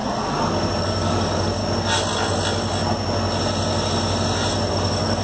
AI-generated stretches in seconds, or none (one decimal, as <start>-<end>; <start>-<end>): 0.8-1.6; 4.7-5.2